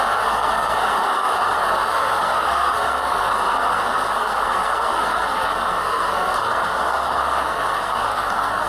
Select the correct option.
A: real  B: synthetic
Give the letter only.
B